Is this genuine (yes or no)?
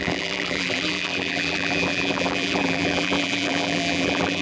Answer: no